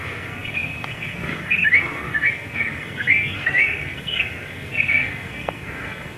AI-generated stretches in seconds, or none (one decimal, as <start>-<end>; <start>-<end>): 0.0-6.2